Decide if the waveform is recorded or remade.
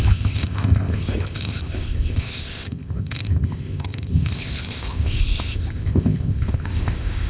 remade